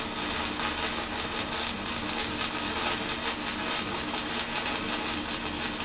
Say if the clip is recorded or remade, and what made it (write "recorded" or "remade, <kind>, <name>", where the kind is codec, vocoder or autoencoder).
recorded